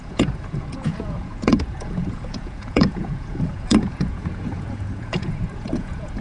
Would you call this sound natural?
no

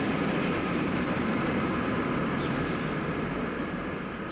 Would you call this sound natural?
no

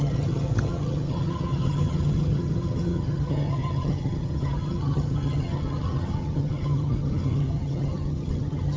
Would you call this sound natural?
no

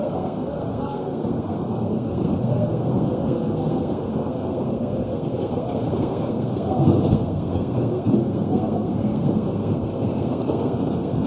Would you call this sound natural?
no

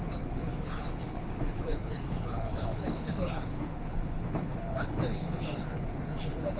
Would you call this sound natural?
no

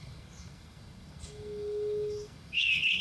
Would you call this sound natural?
no